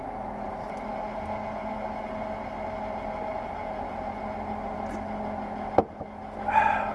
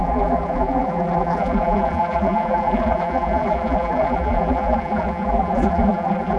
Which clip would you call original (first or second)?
first